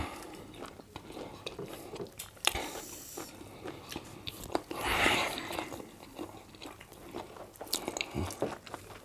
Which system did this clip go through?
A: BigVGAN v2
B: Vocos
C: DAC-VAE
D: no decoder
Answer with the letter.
D